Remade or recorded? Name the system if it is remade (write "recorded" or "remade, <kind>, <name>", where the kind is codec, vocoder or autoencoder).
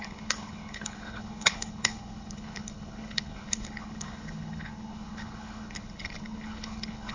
remade, codec, HILCodec